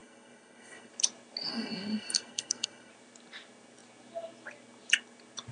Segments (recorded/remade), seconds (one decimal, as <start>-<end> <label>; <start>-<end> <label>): 0.0-0.9 remade; 0.9-1.5 recorded; 1.5-2.9 remade; 2.9-5.5 recorded